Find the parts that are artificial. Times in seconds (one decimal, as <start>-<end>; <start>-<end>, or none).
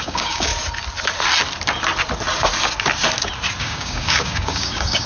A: 0.0-0.5; 3.6-5.1